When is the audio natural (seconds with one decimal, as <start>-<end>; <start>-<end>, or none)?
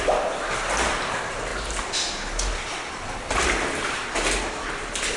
0.0-5.2